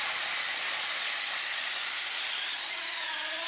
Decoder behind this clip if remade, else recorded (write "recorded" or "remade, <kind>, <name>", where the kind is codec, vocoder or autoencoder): recorded